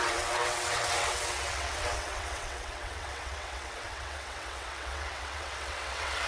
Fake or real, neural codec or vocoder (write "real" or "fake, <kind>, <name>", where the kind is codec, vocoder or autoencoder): fake, vocoder, WaveNeXt